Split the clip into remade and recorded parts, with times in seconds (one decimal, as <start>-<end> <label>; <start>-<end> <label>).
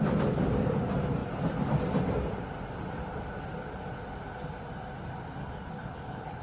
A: 0.0-5.4 recorded; 5.4-6.4 remade